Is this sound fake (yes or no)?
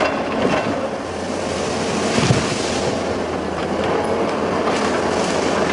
no